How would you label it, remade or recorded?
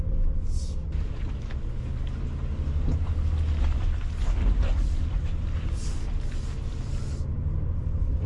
recorded